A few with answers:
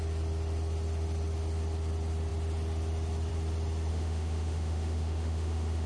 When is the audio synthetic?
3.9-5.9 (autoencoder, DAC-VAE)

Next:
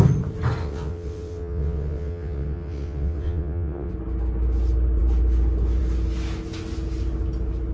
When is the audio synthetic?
0.6-3.9 (vocoder, WaveNeXt)

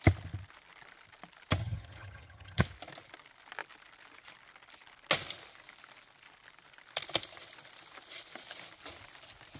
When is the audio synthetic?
1.6-2.6 (vocoder, HiFi-GAN)